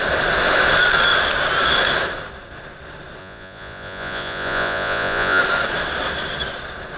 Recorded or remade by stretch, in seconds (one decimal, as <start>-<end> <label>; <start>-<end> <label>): 0.0-3.2 recorded; 3.2-5.4 remade; 5.4-7.0 recorded